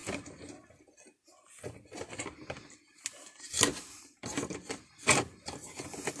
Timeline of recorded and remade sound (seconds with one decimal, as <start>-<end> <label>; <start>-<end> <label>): 0.0-2.1 recorded; 2.1-2.8 remade; 2.8-3.7 recorded; 3.7-4.4 remade; 4.4-6.2 recorded